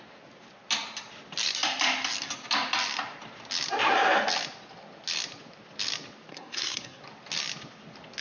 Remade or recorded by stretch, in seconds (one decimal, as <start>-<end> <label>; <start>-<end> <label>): 0.0-6.3 recorded; 6.3-7.0 remade; 7.0-8.2 recorded